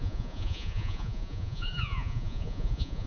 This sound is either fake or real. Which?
fake